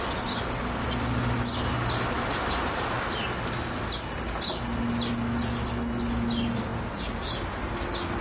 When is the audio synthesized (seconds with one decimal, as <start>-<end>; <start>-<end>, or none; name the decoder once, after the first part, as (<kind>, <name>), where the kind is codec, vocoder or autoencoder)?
none